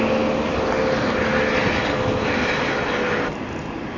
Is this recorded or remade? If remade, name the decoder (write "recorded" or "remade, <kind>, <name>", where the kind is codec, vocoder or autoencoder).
recorded